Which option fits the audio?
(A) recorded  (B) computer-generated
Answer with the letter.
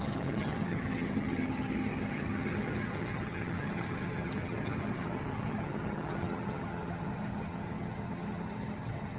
B